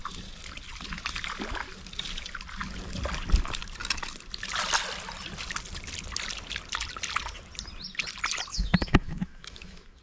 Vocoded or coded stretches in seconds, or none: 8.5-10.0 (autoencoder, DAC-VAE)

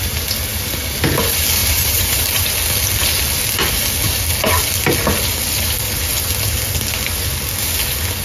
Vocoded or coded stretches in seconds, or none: 1.6-2.5 (vocoder, BigVGAN v2)

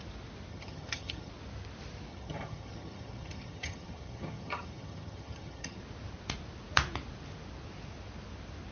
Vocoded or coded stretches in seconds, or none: 0.5-1.3 (vocoder, HiFi-GAN); 2.1-5.8

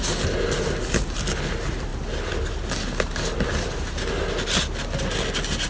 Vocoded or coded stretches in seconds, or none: none

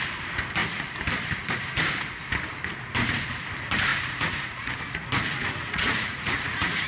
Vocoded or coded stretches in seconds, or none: 3.9-4.7 (vocoder, Vocos); 5.4-6.9